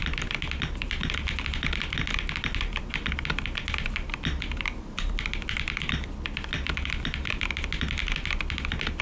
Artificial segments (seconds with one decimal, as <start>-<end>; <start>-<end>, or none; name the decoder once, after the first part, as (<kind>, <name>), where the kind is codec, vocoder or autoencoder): none